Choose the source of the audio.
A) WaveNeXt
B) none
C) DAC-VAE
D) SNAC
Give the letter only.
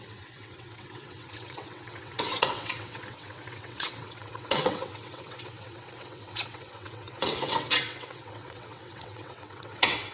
A